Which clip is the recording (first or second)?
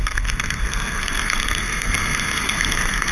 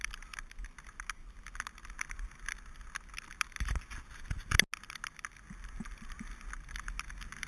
second